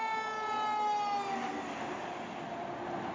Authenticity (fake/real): real